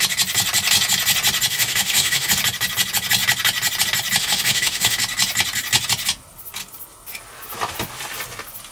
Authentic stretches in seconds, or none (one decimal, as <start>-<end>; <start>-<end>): 0.0-1.5; 2.3-4.2; 5.0-8.7